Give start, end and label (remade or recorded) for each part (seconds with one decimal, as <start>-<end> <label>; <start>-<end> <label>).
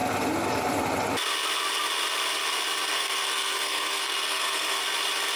0.0-2.9 recorded; 2.9-4.8 remade; 4.8-5.4 recorded